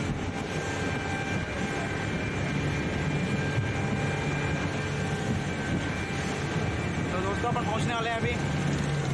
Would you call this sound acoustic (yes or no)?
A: yes